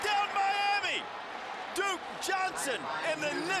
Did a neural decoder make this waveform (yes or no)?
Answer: no